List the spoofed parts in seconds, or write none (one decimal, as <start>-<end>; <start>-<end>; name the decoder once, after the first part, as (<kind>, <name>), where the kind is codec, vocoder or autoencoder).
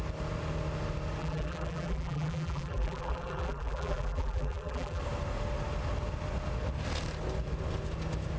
1.2-5.0 (vocoder, BigVGAN v2)